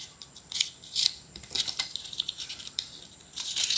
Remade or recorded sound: remade